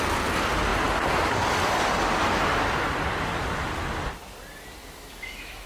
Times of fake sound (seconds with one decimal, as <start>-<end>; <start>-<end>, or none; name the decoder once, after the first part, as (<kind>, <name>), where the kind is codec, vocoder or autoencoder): 4.8-5.7 (autoencoder, DAC-VAE)